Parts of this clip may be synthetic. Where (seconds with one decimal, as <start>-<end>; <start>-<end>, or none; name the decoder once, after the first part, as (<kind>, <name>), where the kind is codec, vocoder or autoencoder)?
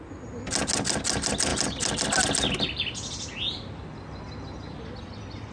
none